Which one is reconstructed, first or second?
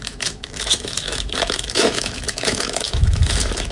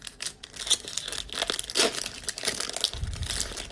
first